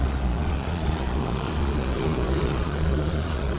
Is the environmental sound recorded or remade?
remade